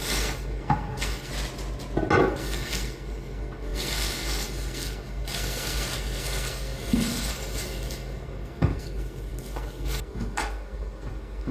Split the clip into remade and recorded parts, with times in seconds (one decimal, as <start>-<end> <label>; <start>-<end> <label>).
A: 0.0-1.3 remade; 1.3-2.2 recorded; 2.2-11.5 remade